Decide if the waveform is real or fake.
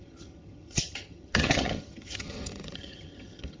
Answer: fake